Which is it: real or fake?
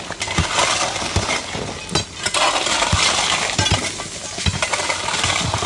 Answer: real